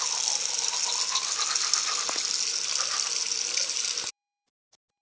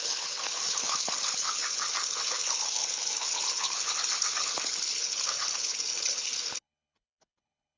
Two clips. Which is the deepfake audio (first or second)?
second